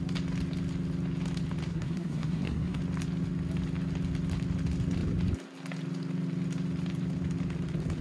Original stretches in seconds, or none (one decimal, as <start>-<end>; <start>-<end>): 0.0-1.7; 2.8-8.0